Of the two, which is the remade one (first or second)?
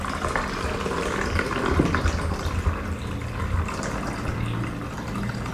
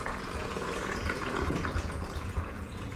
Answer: second